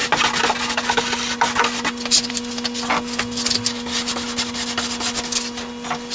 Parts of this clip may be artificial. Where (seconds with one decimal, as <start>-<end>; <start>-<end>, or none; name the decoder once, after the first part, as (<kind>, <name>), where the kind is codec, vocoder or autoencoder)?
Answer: none